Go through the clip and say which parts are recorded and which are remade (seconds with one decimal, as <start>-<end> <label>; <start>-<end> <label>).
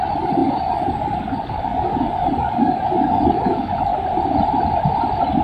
0.0-3.9 remade; 3.9-5.4 recorded